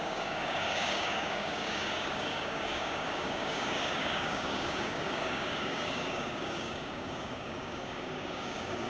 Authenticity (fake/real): fake